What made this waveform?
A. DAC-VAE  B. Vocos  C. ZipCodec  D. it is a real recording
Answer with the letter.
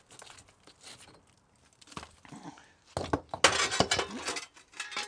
D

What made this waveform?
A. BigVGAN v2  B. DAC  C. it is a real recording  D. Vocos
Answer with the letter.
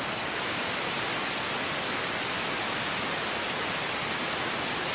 C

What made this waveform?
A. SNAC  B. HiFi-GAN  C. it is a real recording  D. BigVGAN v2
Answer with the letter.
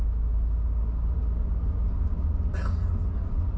C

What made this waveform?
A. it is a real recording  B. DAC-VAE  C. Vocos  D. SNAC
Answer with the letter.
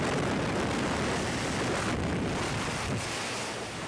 A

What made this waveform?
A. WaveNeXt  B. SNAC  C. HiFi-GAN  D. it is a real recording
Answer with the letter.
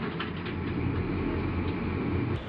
D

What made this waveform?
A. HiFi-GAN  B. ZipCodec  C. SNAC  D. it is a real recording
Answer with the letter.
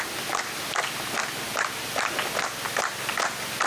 D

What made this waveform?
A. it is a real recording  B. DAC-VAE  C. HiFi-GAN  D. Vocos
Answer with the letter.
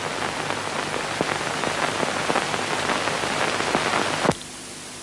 A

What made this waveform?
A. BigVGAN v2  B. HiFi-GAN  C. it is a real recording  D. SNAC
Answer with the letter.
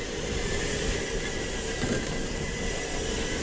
A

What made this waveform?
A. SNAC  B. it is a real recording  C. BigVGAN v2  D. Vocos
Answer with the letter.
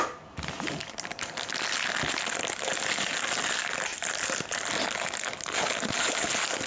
B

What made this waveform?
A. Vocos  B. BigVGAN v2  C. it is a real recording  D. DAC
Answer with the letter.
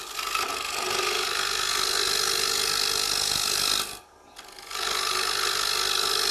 C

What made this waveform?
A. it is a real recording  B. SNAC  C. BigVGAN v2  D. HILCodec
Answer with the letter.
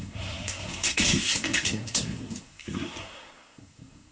B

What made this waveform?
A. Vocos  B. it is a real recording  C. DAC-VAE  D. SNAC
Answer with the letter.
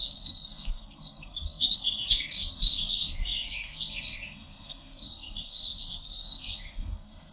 D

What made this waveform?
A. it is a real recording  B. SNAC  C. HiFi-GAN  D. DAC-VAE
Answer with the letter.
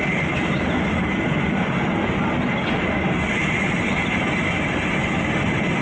A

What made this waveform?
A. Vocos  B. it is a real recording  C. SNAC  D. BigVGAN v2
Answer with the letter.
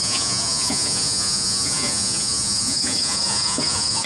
A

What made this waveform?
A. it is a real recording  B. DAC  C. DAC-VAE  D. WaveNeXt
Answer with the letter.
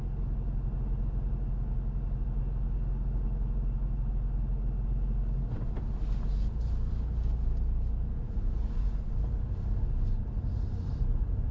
A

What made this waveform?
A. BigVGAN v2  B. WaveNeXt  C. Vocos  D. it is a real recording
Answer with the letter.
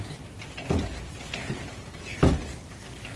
D